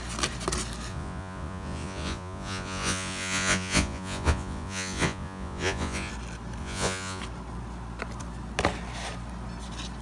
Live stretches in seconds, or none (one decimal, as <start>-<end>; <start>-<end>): 0.0-0.9; 6.1-6.6; 7.2-10.0